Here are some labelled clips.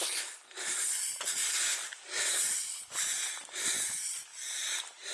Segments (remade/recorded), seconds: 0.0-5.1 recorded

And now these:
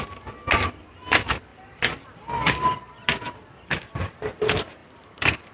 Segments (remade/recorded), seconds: 0.0-1.5 recorded; 1.5-2.5 remade; 2.5-4.8 recorded; 4.8-5.5 remade

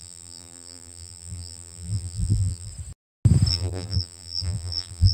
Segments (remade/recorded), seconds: 0.0-2.7 remade; 2.7-3.5 recorded; 3.5-5.1 remade

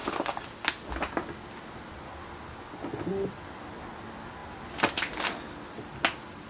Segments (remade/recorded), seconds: 0.0-6.5 recorded

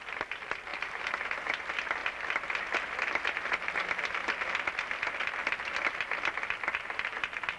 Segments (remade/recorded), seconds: 0.0-0.7 recorded; 0.7-1.5 remade; 1.5-7.6 recorded